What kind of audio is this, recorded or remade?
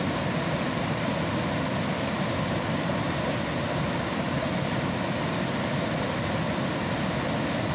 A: recorded